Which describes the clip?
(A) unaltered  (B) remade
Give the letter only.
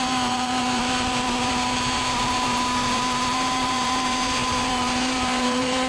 B